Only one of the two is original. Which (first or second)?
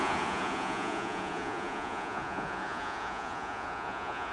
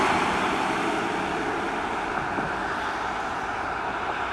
second